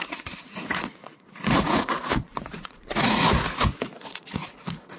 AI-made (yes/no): yes